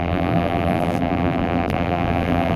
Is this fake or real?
fake